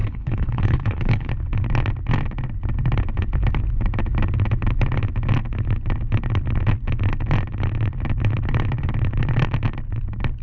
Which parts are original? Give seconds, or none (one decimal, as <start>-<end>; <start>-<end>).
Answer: 1.3-10.4